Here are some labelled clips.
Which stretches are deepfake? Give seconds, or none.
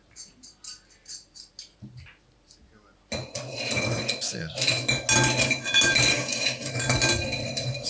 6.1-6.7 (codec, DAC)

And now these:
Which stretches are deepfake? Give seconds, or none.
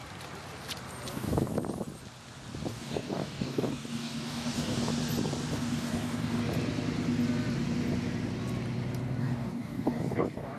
1.1-1.5 (codec, DAC); 2.7-4.9; 5.5-6.4; 9.2-10.6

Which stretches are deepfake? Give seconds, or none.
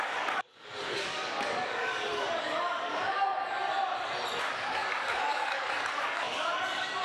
0.0-3.3 (codec, DAC); 4.4-7.0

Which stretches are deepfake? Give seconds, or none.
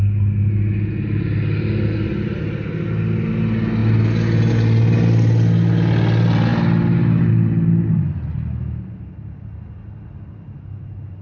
none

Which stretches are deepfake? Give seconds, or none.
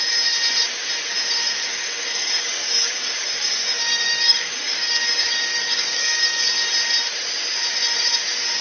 1.7-6.7 (codec, DAC)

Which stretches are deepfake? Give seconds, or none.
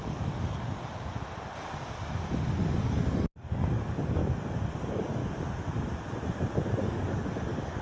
0.0-0.8 (codec, DAC); 2.6-4.2; 4.8-5.2; 6.8-7.8